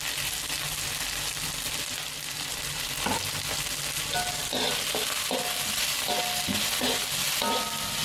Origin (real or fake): real